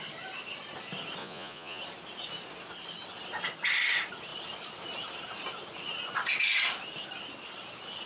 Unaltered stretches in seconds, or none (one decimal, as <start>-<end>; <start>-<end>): 0.0-1.2; 1.8-8.1